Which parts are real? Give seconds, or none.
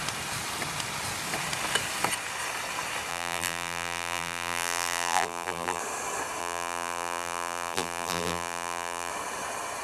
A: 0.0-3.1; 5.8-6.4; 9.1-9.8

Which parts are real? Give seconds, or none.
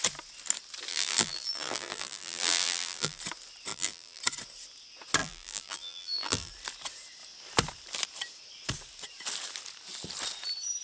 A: 0.0-0.9; 3.2-3.7; 4.2-5.2; 6.5-10.8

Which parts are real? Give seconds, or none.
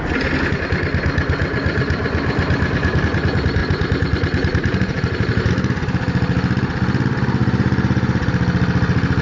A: 0.0-3.6; 5.5-7.4; 8.3-9.2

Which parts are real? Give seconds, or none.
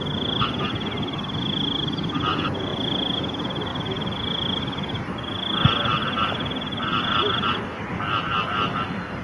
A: 0.0-3.7; 4.6-5.9; 7.2-9.2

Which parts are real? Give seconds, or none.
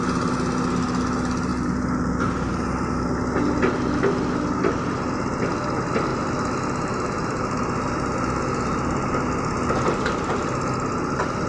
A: 0.0-1.5; 2.5-11.5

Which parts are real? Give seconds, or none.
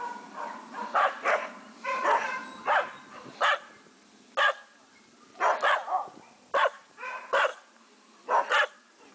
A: 2.4-6.6; 7.5-8.7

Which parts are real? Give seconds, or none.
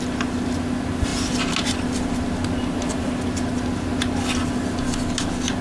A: 0.0-5.6